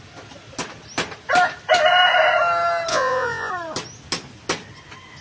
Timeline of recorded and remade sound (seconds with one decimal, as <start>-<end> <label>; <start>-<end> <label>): 0.0-2.9 recorded; 2.9-3.5 remade; 3.5-5.2 recorded